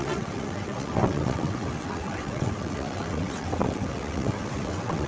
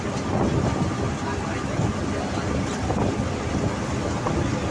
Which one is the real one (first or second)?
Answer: second